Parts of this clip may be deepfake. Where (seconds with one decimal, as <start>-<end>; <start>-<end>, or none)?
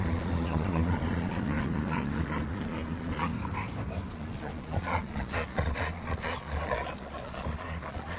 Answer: 0.0-3.3; 4.1-8.2